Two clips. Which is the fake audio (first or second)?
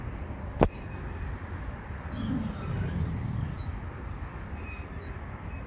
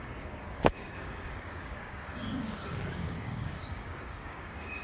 second